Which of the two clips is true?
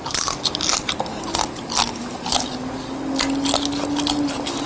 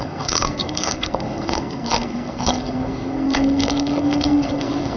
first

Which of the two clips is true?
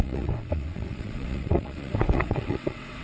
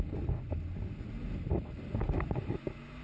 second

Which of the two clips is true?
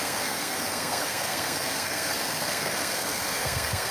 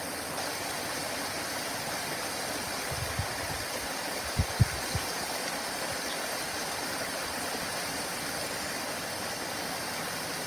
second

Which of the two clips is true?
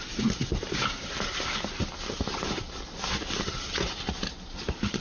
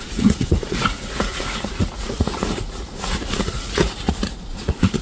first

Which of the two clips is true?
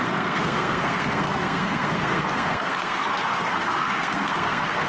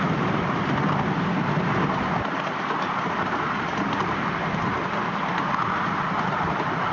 second